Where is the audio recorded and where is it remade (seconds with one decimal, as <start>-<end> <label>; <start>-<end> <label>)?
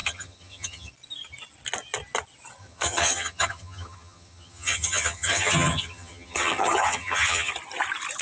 0.0-0.9 remade; 0.9-2.6 recorded; 2.6-7.5 remade; 7.5-8.2 recorded